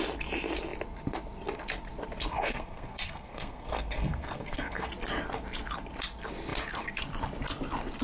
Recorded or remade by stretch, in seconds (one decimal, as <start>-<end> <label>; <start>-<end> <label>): 0.0-2.3 recorded; 2.3-4.9 remade; 4.9-8.0 recorded